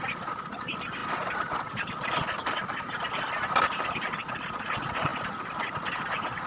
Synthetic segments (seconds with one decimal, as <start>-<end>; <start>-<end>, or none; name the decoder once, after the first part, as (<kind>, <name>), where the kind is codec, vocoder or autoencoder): none